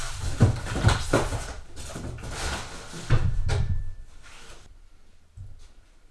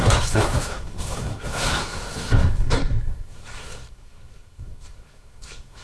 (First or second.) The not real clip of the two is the second